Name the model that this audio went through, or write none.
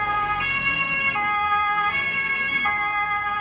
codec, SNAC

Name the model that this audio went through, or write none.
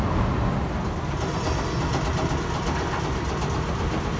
none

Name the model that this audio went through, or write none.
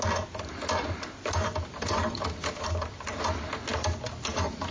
none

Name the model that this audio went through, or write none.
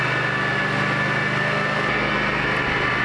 none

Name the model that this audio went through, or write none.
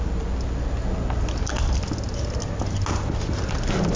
none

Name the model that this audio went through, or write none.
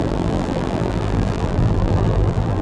vocoder, BigVGAN v2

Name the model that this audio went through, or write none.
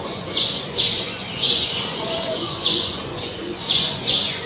vocoder, Vocos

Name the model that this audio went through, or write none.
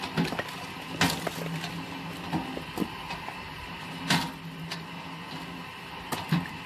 none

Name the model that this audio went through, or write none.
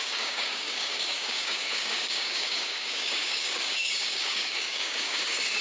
codec, DAC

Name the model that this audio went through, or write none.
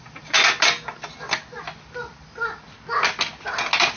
none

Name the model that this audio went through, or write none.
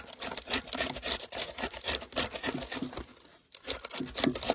none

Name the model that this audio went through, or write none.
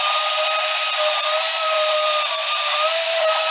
none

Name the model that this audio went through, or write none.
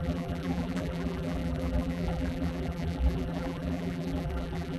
vocoder, BigVGAN v2